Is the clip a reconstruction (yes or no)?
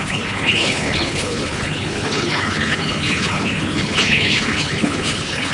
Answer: yes